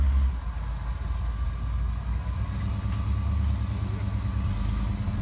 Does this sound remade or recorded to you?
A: recorded